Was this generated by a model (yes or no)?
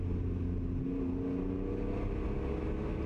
no